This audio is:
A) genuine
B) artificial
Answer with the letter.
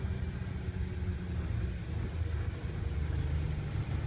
A